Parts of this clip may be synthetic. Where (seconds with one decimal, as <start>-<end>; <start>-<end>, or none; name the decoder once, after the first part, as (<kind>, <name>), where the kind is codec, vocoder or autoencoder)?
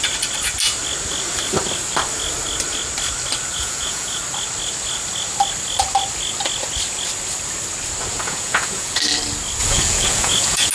3.5-4.2 (vocoder, Vocos); 8.1-9.0; 9.6-10.7